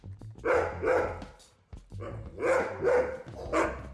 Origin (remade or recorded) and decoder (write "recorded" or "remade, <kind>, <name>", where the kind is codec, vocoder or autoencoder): recorded